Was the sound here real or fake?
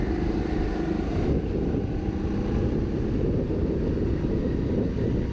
real